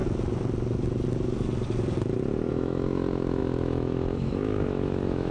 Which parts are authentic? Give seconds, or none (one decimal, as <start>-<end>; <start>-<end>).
0.0-2.5